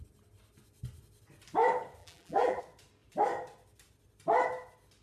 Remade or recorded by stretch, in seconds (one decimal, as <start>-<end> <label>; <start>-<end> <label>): 0.0-2.0 recorded; 2.0-2.6 remade; 2.6-5.0 recorded